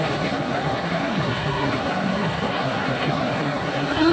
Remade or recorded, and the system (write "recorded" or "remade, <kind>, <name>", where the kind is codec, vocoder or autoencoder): remade, codec, SNAC